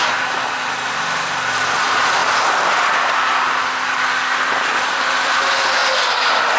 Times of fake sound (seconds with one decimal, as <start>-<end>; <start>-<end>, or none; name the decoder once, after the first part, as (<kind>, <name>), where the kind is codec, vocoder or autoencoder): none